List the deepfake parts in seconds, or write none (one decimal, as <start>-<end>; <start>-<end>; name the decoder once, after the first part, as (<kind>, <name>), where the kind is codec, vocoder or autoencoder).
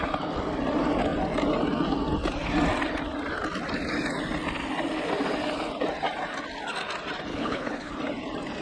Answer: 7.3-7.9 (codec, HILCodec)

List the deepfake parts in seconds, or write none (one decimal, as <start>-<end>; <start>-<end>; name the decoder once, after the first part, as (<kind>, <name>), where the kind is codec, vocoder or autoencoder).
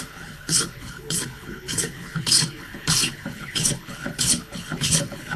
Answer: 0.0-5.4 (codec, HILCodec)